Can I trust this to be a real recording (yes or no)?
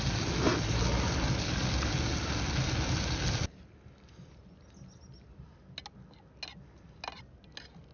yes